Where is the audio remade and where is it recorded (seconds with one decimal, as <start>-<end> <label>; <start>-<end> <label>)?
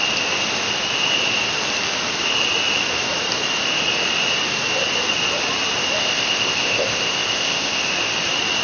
0.0-6.0 recorded; 6.0-7.9 remade; 7.9-8.6 recorded